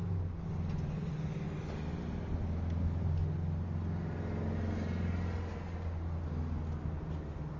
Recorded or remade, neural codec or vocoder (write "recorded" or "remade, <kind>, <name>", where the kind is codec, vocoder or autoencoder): recorded